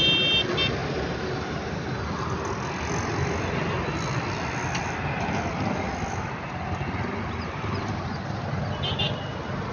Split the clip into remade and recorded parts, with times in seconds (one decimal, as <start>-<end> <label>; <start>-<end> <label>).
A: 0.0-9.7 recorded